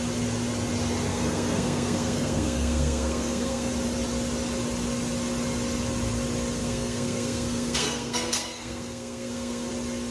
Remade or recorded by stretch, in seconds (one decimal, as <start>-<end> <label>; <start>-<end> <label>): 0.0-1.1 recorded; 1.1-3.7 remade; 3.7-6.6 recorded; 6.6-9.7 remade; 9.7-10.1 recorded